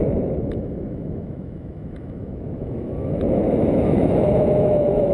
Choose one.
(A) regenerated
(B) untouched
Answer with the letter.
A